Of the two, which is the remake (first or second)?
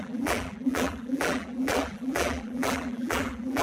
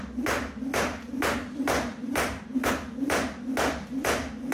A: first